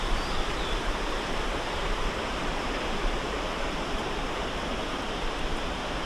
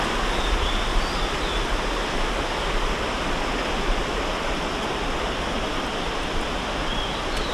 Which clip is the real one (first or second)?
second